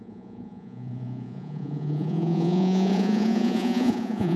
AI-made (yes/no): yes